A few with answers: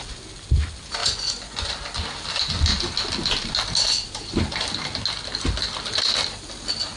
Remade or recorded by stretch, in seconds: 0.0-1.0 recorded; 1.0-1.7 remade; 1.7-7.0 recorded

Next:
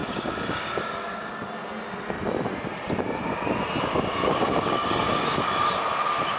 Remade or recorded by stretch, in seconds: 0.0-1.3 remade; 1.3-4.2 recorded; 4.2-5.7 remade; 5.7-6.4 recorded

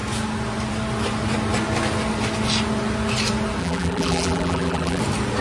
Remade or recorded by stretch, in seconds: 0.0-3.6 recorded; 3.6-5.0 remade; 5.0-5.4 recorded

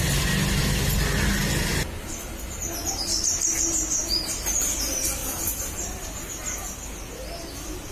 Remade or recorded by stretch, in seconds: 0.0-7.9 recorded

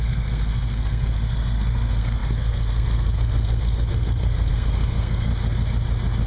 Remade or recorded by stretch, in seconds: 0.0-5.3 remade; 5.3-6.3 recorded